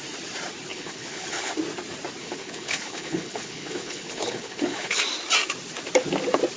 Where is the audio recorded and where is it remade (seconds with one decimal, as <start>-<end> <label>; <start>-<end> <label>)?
0.0-0.7 recorded; 0.7-1.5 remade; 1.5-2.2 recorded; 2.2-5.0 remade; 5.0-6.6 recorded